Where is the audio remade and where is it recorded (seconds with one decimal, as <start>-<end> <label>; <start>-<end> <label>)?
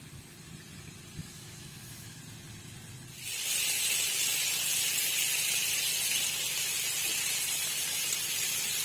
0.0-1.2 recorded; 1.2-2.2 remade; 2.2-8.8 recorded